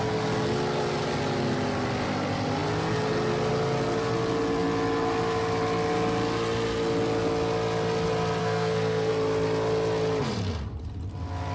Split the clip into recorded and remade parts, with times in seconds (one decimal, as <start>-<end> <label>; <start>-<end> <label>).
0.0-8.4 recorded; 8.4-9.1 remade; 9.1-11.5 recorded